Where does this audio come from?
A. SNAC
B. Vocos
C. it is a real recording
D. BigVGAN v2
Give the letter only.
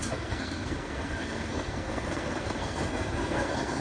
A